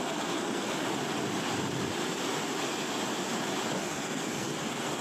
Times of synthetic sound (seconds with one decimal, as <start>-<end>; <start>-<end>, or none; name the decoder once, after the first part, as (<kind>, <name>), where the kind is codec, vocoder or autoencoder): 0.0-0.8 (codec, SNAC); 3.8-5.0